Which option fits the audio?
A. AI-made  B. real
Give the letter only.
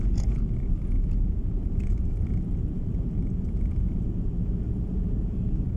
A